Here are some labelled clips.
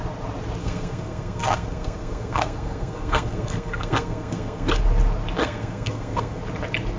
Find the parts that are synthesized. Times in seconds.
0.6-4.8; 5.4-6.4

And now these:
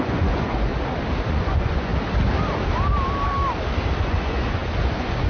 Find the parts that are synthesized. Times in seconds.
0.0-0.7; 1.3-1.9; 4.0-5.3

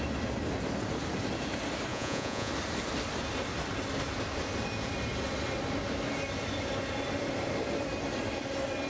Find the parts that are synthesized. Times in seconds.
1.9-2.5